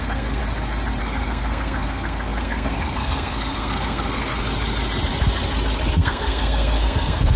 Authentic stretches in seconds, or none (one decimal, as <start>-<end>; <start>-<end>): 0.4-1.0; 4.3-5.9